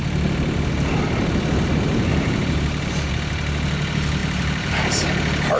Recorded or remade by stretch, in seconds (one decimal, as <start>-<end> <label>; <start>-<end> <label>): 0.0-2.1 recorded; 2.1-3.1 remade; 3.1-4.2 recorded; 4.2-4.7 remade; 4.7-5.6 recorded